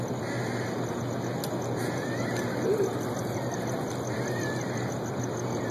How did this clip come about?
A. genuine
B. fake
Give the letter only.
A